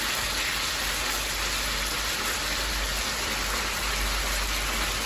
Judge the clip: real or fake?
real